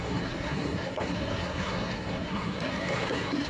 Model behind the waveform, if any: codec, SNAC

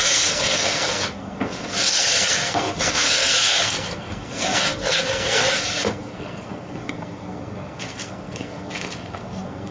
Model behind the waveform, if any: codec, SNAC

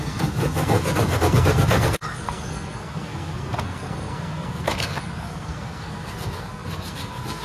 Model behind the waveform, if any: codec, SNAC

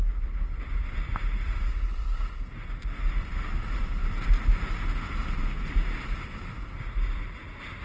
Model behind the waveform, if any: none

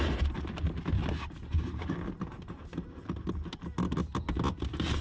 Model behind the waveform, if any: none